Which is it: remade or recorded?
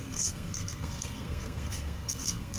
remade